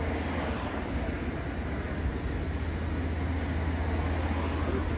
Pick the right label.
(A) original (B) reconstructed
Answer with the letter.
A